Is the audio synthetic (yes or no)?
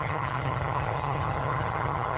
yes